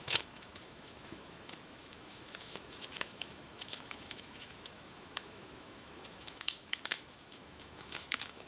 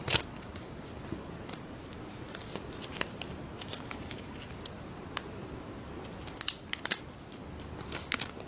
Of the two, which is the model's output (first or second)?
first